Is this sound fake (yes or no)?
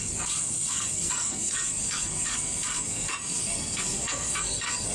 yes